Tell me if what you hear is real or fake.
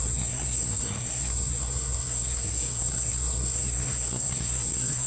fake